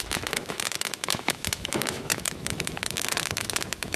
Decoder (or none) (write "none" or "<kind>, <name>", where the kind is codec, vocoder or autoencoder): autoencoder, DAC-VAE